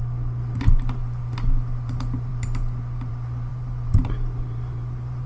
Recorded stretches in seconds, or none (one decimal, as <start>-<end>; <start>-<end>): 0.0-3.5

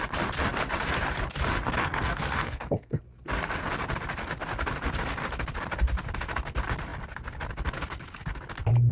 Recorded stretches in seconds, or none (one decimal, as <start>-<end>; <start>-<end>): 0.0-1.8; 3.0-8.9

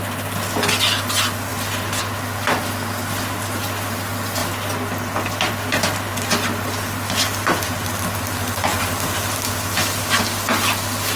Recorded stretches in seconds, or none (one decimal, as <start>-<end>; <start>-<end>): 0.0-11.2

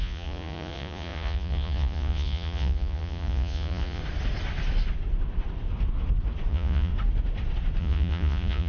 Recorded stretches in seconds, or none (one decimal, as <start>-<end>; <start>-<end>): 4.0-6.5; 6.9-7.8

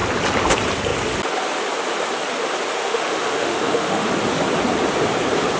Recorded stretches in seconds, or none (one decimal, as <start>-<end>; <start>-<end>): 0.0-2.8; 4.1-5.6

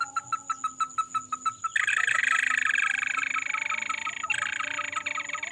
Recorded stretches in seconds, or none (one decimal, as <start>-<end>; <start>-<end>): 0.0-5.5

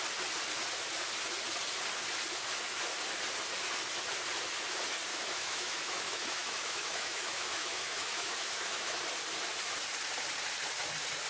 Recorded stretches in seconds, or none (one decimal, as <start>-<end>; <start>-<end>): 0.0-5.1; 9.0-11.3

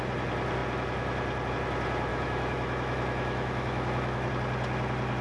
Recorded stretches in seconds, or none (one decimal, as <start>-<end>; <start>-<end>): 0.0-2.1; 4.3-5.2